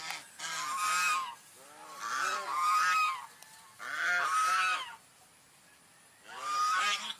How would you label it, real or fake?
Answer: real